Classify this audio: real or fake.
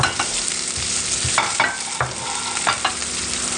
real